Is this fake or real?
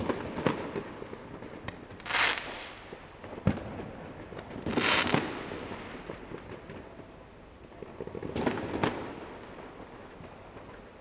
real